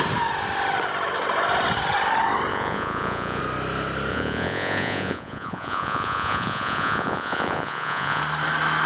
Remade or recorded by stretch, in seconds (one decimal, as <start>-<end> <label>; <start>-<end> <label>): 0.0-2.5 recorded; 2.5-3.4 remade; 3.4-4.1 recorded; 4.1-8.2 remade; 8.2-8.9 recorded